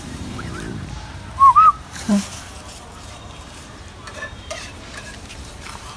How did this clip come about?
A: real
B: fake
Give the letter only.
B